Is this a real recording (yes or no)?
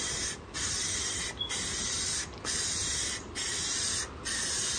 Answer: yes